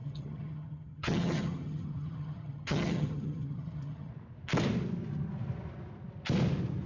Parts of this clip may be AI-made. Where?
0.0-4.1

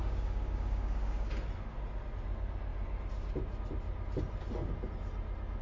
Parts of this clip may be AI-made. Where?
0.0-1.3

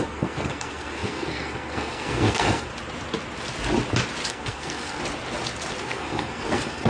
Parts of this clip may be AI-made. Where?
0.0-2.7; 4.3-5.0; 5.8-6.9

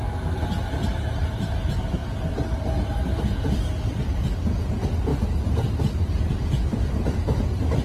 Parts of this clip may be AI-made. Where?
none

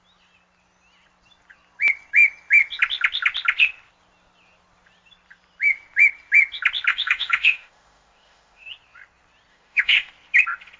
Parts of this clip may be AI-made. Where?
6.9-8.7; 9.5-10.1

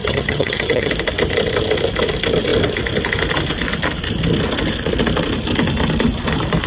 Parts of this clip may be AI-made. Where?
0.0-0.9

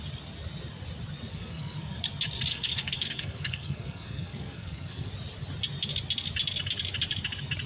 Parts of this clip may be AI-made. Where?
1.3-2.0; 2.5-5.1

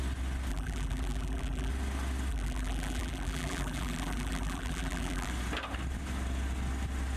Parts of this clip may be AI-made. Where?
0.5-1.7; 2.3-5.3